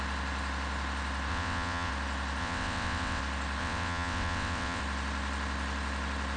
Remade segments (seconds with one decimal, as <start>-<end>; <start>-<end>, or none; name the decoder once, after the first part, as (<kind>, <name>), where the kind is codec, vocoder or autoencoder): 1.3-1.9 (vocoder, WaveNeXt); 2.4-3.2; 3.6-4.8